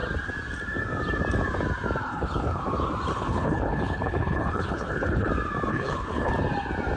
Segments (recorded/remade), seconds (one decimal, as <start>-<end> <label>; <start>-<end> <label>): 0.0-2.0 recorded; 2.0-2.6 remade; 2.6-3.1 recorded; 3.1-5.3 remade; 5.3-5.7 recorded; 5.7-6.3 remade; 6.3-7.0 recorded